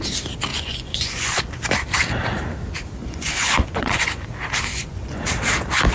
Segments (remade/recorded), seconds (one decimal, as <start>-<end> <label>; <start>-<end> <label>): 0.0-0.5 recorded; 0.5-1.4 remade; 1.4-3.0 recorded; 3.0-4.3 remade; 4.3-4.7 recorded; 4.7-5.2 remade; 5.2-5.9 recorded